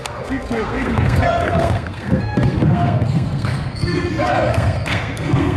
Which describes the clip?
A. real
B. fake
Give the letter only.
B